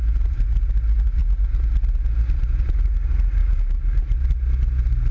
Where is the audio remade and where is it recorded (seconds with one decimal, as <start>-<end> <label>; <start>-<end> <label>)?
0.0-3.4 recorded; 3.4-4.0 remade; 4.0-5.1 recorded